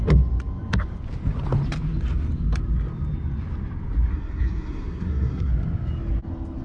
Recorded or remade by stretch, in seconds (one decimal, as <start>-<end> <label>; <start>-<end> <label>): 0.0-4.1 recorded; 4.1-5.5 remade; 5.5-6.6 recorded